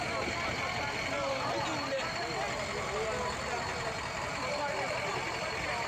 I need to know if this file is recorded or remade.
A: recorded